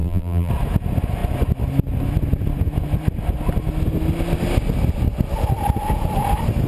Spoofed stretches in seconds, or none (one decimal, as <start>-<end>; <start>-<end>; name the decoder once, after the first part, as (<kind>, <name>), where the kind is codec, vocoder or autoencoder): 0.0-0.5 (vocoder, BigVGAN v2)